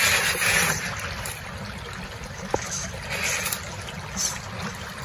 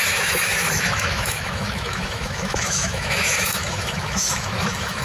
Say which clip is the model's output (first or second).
second